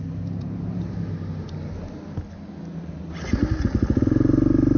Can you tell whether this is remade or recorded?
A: recorded